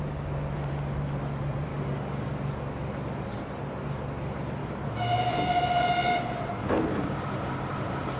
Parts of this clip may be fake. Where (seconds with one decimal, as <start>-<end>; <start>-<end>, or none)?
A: 1.7-2.3